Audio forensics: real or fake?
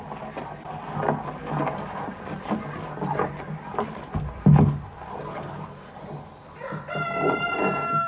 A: real